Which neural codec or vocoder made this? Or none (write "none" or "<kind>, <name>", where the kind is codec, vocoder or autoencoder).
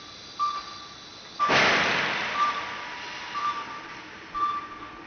none